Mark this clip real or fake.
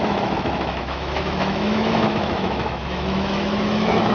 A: fake